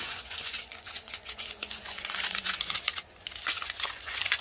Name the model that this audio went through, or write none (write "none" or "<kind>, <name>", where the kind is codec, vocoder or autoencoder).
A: vocoder, Vocos